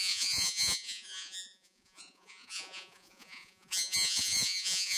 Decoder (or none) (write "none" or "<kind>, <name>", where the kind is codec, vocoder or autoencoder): vocoder, Vocos